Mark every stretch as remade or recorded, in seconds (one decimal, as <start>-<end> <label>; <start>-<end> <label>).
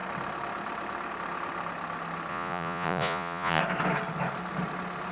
0.0-2.3 recorded; 2.3-3.6 remade; 3.6-5.1 recorded